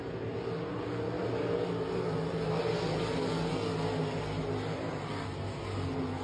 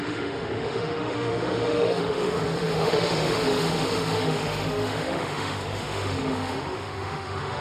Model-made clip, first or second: second